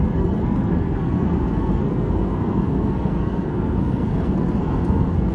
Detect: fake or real fake